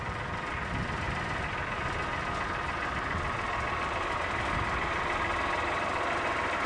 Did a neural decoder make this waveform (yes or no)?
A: no